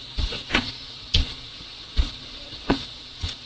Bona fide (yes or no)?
no